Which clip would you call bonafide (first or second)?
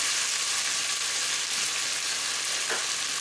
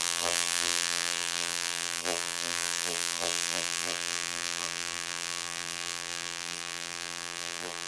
first